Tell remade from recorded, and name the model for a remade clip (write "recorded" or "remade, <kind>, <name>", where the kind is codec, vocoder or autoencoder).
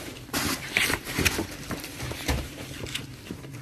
remade, vocoder, BigVGAN v2